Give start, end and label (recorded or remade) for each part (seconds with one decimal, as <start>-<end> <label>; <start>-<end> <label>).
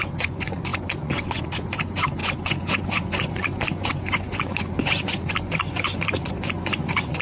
0.0-7.2 remade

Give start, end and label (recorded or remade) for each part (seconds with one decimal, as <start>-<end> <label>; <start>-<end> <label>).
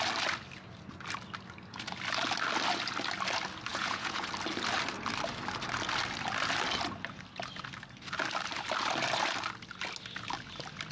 0.0-3.7 recorded; 3.7-4.3 remade; 4.3-10.9 recorded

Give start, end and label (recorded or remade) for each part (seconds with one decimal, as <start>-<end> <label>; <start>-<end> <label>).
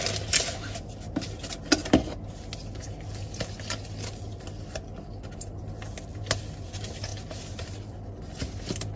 0.0-9.0 recorded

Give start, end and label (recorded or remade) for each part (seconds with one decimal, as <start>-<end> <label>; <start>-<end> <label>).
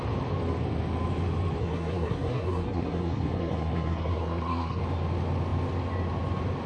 0.0-1.6 recorded; 1.6-4.8 remade; 4.8-6.7 recorded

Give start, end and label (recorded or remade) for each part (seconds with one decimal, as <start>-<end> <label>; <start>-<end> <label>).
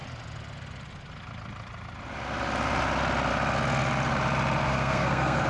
0.0-4.6 recorded; 4.6-5.5 remade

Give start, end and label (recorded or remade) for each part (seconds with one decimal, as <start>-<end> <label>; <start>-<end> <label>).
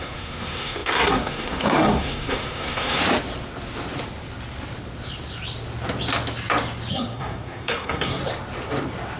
0.0-3.0 remade; 3.0-6.9 recorded; 6.9-8.2 remade; 8.2-9.2 recorded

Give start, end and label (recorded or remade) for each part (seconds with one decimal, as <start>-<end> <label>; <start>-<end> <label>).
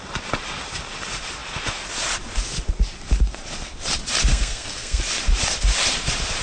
0.0-4.3 recorded; 4.3-5.0 remade; 5.0-6.4 recorded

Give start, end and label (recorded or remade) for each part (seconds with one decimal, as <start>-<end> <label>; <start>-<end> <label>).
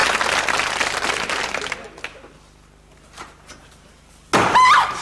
0.0-2.9 recorded; 2.9-4.3 remade; 4.3-5.0 recorded